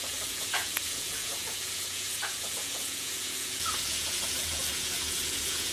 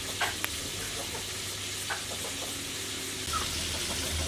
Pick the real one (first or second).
second